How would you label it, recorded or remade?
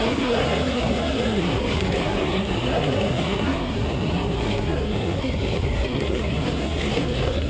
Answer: remade